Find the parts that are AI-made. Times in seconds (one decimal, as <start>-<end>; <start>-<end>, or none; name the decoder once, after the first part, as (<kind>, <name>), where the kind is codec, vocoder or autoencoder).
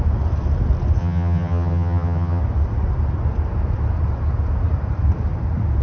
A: 1.0-2.4 (vocoder, HiFi-GAN)